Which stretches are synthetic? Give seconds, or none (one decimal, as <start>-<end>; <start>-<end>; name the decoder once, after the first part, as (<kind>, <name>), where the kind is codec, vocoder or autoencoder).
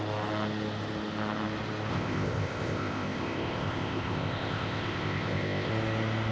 1.9-5.7 (codec, ZipCodec)